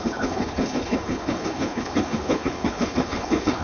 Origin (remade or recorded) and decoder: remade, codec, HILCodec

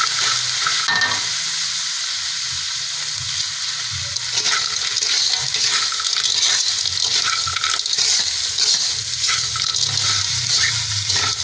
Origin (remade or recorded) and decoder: recorded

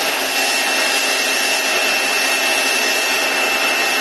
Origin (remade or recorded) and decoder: recorded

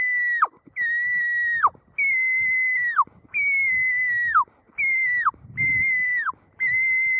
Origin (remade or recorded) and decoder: recorded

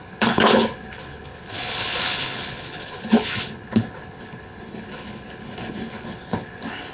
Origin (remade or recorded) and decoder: remade, codec, HILCodec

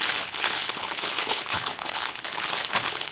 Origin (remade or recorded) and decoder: remade, codec, HILCodec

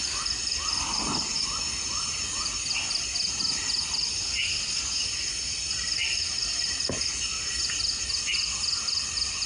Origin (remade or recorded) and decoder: recorded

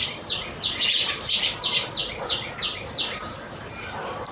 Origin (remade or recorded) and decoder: recorded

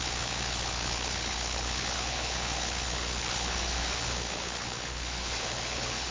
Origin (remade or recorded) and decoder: remade, codec, HILCodec